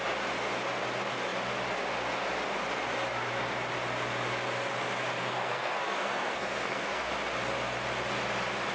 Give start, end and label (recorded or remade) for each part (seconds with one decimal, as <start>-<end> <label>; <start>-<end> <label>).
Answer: 0.0-5.2 recorded; 5.2-7.1 remade; 7.1-8.7 recorded